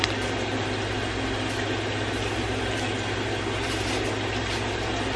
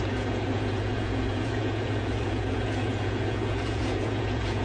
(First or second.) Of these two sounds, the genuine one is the first